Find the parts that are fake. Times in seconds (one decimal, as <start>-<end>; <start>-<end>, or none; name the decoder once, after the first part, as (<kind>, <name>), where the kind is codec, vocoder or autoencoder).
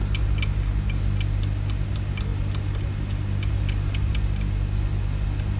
none